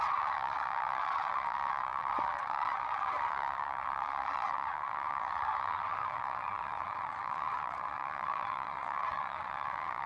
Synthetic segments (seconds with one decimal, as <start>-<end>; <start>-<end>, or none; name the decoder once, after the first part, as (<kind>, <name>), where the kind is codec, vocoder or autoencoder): 0.0-10.1 (vocoder, WaveNeXt)